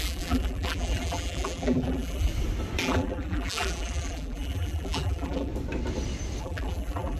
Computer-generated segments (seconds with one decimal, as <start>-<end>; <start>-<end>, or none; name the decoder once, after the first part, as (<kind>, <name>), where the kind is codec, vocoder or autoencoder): 0.0-2.3 (vocoder, BigVGAN v2); 2.8-5.5; 6.4-7.2